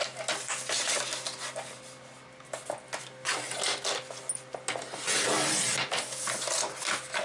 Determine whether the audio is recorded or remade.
recorded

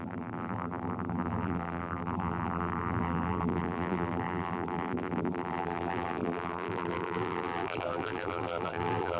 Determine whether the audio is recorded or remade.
remade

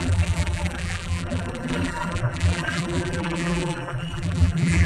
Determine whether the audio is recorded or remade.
remade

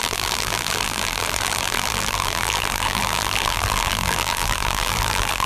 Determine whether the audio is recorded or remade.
remade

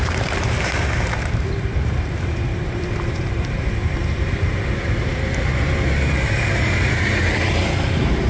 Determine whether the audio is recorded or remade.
remade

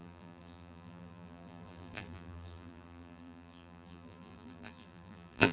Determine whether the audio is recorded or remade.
remade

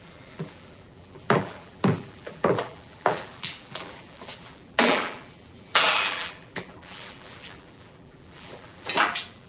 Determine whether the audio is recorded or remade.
remade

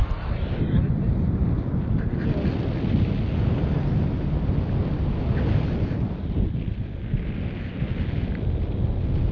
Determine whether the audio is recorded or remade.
recorded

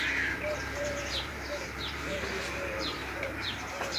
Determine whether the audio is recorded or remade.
remade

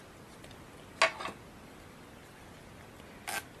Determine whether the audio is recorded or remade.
recorded